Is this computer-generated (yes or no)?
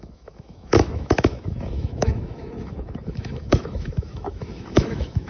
yes